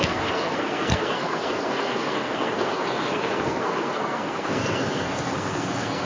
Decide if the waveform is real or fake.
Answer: fake